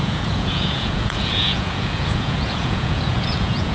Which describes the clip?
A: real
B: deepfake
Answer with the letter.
B